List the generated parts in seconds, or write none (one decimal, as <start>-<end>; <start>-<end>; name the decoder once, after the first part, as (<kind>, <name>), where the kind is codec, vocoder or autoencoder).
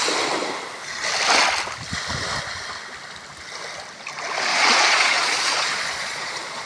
4.5-6.7 (vocoder, Vocos)